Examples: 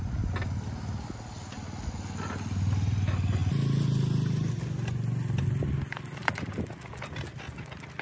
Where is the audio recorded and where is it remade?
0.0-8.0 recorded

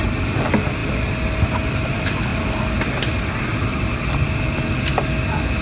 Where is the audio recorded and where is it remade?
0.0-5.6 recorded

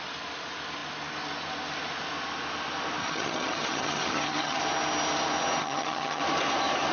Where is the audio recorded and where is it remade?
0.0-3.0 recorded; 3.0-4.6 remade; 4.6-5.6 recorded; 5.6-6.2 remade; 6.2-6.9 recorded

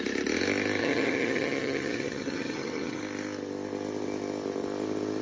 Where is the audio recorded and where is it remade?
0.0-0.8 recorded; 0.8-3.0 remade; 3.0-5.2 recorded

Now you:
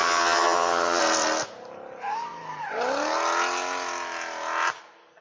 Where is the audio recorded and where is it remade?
0.0-1.0 remade; 1.0-5.2 recorded